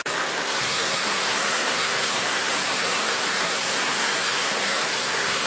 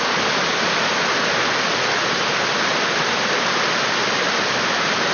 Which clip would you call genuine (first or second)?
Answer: second